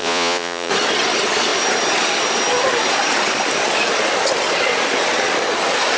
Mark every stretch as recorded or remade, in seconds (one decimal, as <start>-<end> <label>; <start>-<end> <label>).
0.0-0.7 remade; 0.7-6.0 recorded